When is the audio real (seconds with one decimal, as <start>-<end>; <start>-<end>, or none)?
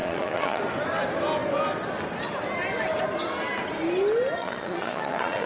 0.6-4.4